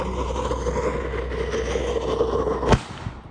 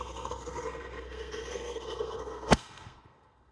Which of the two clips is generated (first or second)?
second